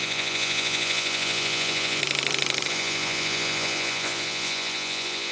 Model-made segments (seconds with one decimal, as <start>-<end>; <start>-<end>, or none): 0.0-2.0; 2.7-5.3